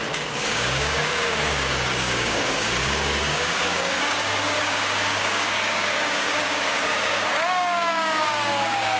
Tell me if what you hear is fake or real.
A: fake